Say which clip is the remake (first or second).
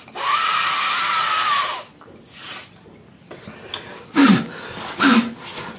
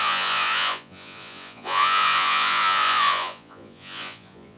second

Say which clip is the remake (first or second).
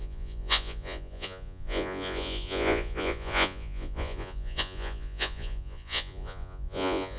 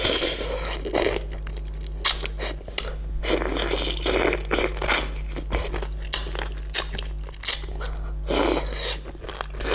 first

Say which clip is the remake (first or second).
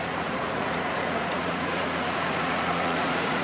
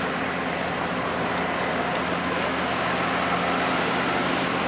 first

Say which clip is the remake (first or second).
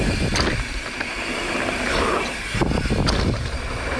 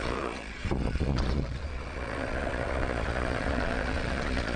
second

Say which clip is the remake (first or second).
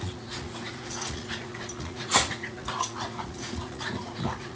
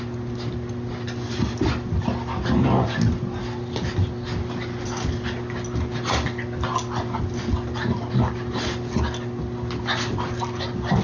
first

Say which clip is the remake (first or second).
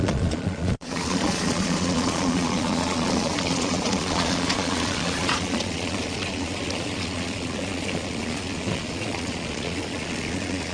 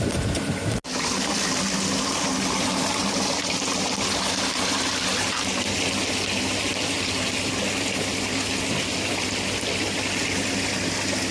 first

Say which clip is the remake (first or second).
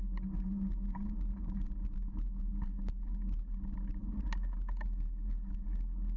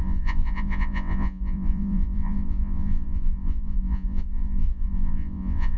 second